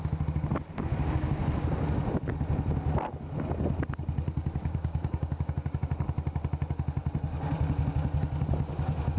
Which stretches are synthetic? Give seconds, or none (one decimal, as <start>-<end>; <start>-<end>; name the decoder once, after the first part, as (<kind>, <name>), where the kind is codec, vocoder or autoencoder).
4.6-5.9 (codec, DAC)